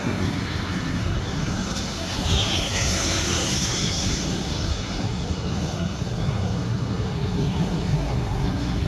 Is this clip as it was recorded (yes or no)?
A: no